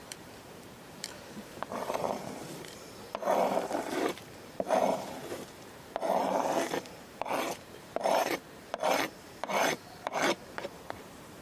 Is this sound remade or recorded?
remade